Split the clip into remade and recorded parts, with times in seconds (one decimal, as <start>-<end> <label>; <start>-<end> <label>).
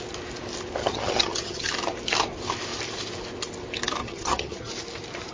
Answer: 0.0-0.8 recorded; 0.8-1.7 remade; 1.7-4.0 recorded; 4.0-4.7 remade; 4.7-5.3 recorded